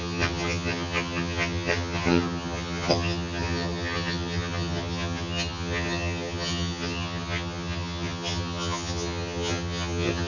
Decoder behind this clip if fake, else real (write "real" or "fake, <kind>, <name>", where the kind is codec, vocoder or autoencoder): fake, vocoder, HiFi-GAN